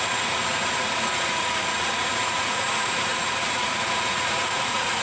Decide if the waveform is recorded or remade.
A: remade